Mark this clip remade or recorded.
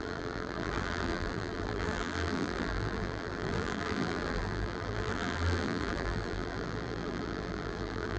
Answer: remade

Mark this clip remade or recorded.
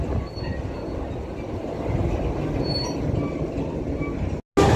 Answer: recorded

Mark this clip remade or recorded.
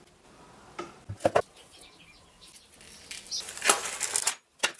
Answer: recorded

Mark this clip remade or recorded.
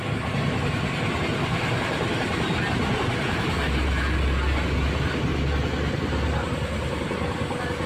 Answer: recorded